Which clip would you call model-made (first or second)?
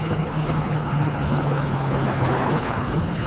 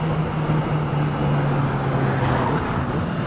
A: first